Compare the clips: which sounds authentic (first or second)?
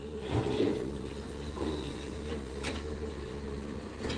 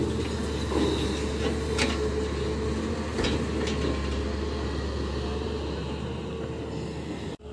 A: second